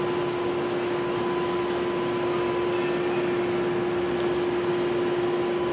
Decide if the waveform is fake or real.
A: real